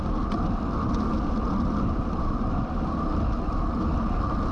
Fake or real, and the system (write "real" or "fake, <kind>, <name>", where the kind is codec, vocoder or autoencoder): real